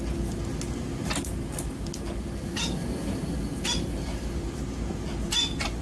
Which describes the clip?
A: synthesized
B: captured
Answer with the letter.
B